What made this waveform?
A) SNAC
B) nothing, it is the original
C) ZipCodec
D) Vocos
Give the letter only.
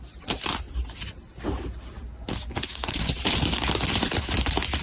B